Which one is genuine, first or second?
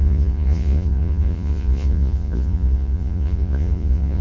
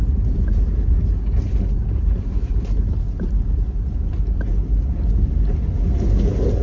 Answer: second